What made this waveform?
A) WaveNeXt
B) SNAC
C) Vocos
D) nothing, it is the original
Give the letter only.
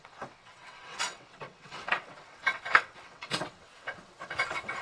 A